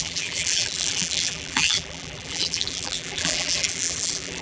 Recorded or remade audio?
remade